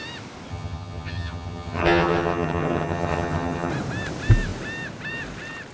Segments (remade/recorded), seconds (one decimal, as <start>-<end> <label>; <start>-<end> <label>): 0.0-0.5 recorded; 0.5-3.7 remade; 3.7-5.7 recorded